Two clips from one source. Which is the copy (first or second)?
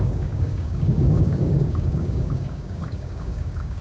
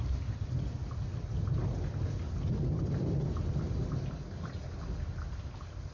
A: first